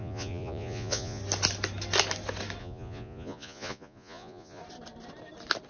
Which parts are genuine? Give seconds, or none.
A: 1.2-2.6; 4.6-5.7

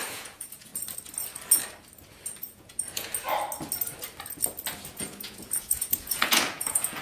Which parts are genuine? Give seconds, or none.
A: 0.7-2.4; 3.1-4.9

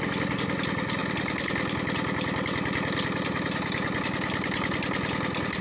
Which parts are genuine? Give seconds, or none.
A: 0.0-5.6

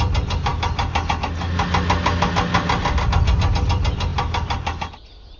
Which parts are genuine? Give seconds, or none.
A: 0.0-5.4

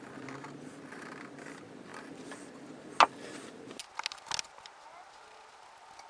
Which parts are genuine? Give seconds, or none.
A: 0.0-6.1

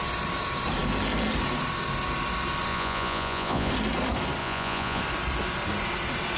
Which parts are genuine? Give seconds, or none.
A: 0.0-2.7; 3.7-4.4; 5.0-6.4